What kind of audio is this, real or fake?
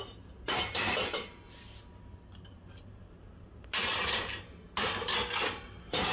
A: fake